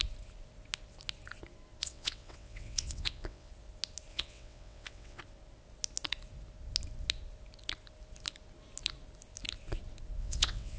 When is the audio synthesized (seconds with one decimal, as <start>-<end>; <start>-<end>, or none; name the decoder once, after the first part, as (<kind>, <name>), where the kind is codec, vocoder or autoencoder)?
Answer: 1.8-3.5 (vocoder, WaveNeXt); 4.1-5.2; 10.2-10.8